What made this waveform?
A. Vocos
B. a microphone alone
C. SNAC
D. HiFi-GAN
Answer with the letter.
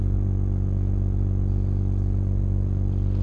B